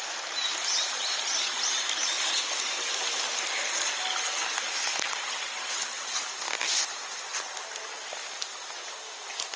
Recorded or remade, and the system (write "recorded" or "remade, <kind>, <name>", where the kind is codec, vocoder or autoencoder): recorded